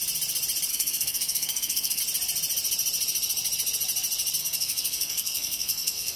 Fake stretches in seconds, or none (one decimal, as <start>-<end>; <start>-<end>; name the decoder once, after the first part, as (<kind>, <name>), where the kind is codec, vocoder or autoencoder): 0.7-2.0 (codec, SNAC); 4.4-6.2